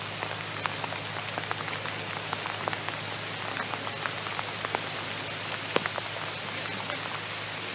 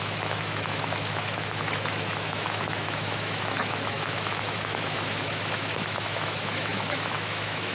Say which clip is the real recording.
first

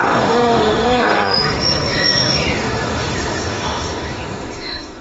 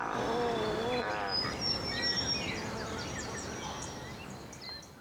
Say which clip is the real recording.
second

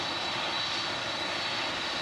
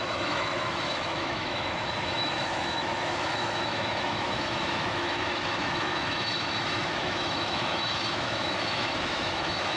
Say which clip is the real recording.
first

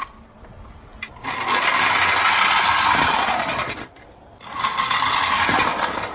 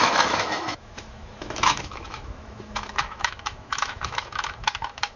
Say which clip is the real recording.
first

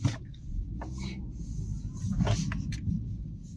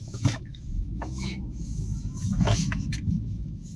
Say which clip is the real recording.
first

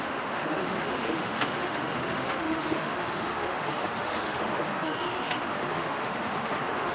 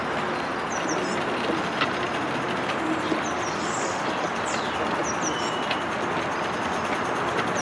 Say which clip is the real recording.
second